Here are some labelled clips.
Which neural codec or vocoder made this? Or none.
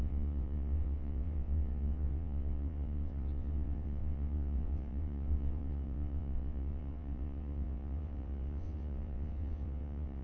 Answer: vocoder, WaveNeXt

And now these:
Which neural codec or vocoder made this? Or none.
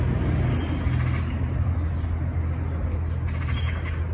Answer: none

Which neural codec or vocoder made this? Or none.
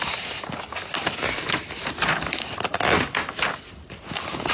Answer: none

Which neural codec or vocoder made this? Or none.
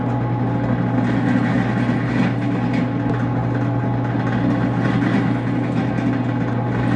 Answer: none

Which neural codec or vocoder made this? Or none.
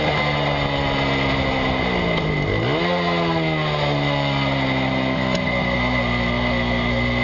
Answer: none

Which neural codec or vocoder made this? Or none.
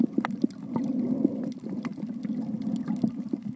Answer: none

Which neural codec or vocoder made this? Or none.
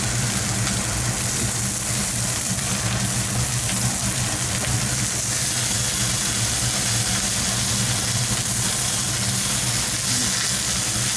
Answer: none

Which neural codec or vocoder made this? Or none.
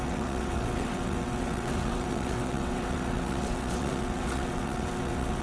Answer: vocoder, WaveNeXt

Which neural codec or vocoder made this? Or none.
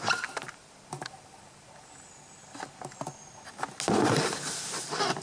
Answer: none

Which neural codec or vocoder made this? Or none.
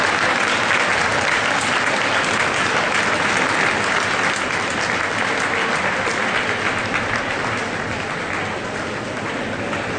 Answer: none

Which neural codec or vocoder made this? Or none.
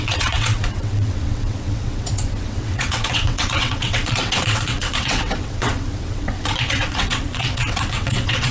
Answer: vocoder, WaveNeXt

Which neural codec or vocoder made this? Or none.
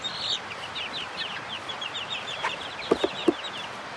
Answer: none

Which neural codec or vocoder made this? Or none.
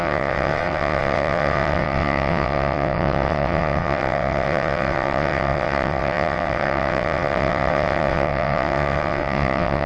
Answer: vocoder, WaveNeXt